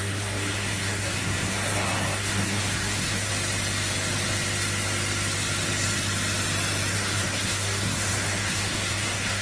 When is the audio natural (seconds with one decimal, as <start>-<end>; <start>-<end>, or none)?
3.3-6.9